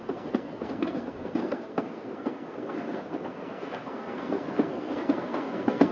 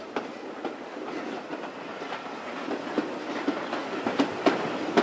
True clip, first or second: second